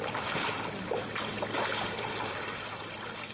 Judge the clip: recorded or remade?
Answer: recorded